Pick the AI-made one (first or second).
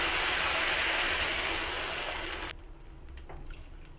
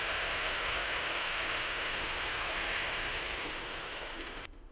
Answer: second